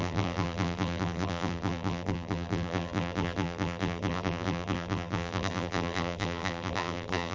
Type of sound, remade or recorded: remade